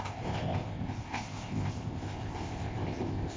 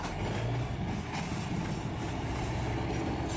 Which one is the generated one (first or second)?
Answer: first